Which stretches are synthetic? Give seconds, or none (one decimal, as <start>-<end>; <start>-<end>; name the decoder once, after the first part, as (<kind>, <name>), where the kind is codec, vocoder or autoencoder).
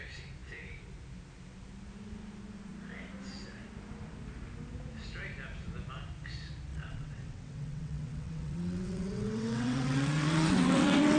6.7-11.2 (vocoder, WaveNeXt)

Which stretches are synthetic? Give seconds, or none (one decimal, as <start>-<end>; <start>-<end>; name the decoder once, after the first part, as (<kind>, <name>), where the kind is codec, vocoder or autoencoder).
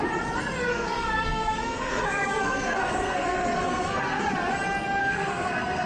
0.7-4.2 (codec, SNAC); 5.0-5.9